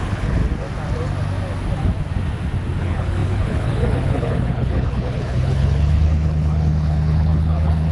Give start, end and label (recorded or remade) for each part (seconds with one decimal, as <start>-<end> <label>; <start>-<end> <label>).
0.0-0.4 remade; 0.4-2.8 recorded; 2.8-7.9 remade